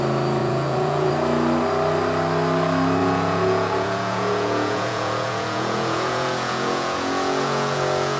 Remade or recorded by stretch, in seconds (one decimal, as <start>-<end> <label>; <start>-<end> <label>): 0.0-0.4 recorded; 0.4-1.1 remade; 1.1-3.0 recorded; 3.0-8.2 remade